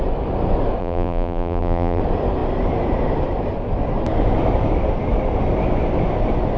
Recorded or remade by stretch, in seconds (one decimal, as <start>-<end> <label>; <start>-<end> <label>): 0.0-0.8 recorded; 0.8-2.0 remade; 2.0-6.6 recorded